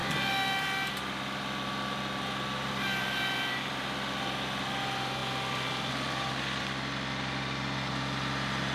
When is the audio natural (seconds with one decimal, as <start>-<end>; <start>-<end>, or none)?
0.0-8.7